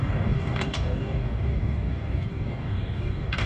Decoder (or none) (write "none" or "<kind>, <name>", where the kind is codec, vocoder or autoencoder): codec, DAC